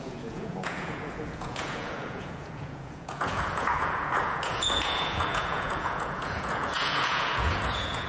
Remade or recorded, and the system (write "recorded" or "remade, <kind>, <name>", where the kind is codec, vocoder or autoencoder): remade, vocoder, Vocos